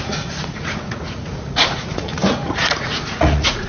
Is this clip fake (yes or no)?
yes